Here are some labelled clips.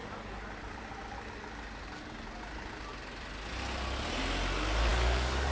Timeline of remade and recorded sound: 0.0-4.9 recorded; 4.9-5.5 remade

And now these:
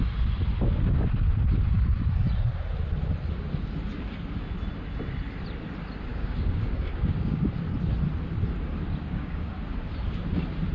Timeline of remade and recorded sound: 0.0-6.1 recorded; 6.1-7.5 remade; 7.5-9.0 recorded; 9.0-9.5 remade; 9.5-10.7 recorded

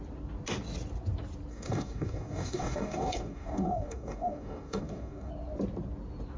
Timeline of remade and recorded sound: 0.0-1.5 recorded; 1.5-5.3 remade; 5.3-6.4 recorded